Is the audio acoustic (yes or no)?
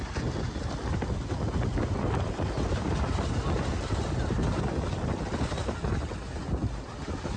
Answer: yes